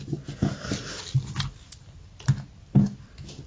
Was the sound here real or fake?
real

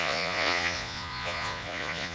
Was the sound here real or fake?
fake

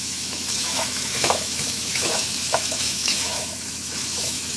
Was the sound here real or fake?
fake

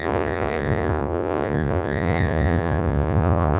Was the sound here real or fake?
fake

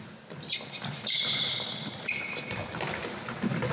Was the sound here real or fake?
real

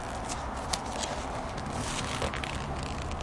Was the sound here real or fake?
real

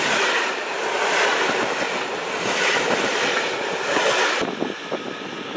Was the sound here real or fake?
real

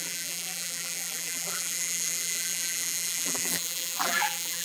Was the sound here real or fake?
fake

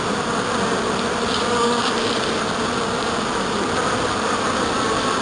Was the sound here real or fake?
real